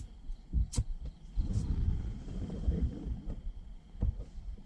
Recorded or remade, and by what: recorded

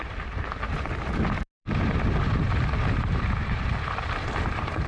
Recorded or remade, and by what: remade, vocoder, BigVGAN v2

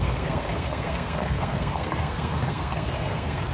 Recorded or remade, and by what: remade, codec, SNAC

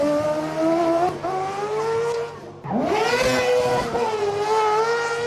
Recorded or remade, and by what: recorded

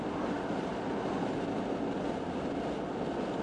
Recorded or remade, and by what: recorded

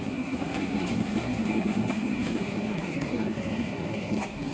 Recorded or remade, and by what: remade, codec, SNAC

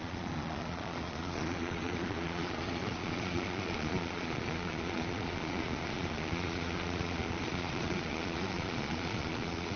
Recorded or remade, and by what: remade, vocoder, Vocos